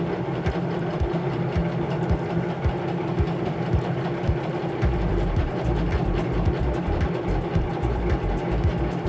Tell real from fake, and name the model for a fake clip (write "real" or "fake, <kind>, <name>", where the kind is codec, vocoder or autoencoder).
real